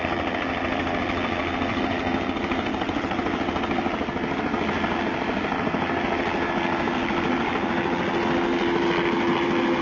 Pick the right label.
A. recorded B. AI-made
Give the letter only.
A